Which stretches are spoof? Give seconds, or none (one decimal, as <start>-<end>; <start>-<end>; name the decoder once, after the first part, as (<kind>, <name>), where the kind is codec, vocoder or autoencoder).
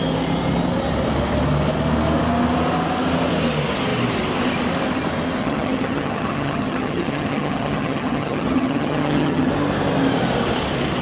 5.4-9.5 (vocoder, HiFi-GAN)